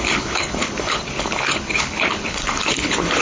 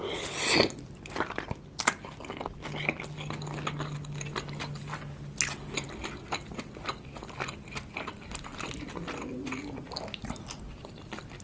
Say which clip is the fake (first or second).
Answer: first